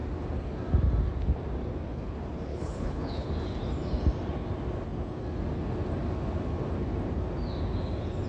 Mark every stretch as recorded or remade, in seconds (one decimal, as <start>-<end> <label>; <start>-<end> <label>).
0.0-2.5 recorded; 2.5-3.3 remade; 3.3-8.3 recorded